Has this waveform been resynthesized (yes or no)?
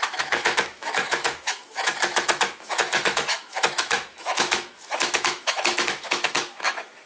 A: yes